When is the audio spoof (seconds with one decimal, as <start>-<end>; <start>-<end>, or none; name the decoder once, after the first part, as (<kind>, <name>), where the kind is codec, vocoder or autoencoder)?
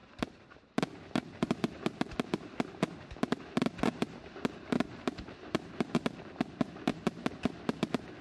0.0-8.2 (vocoder, BigVGAN v2)